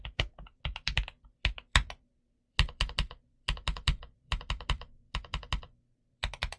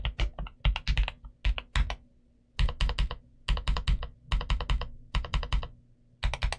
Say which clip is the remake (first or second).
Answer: first